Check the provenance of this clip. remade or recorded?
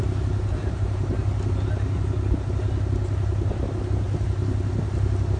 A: recorded